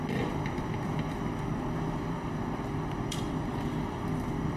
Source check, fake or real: fake